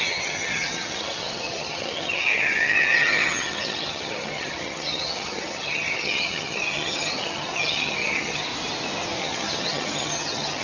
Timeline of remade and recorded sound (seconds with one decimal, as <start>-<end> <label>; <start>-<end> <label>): 0.0-8.5 remade; 8.5-9.2 recorded; 9.2-10.6 remade